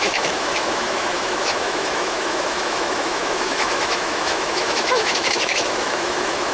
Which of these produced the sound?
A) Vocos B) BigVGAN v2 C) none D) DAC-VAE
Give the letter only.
D